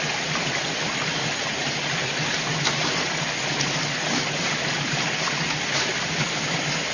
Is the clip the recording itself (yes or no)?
yes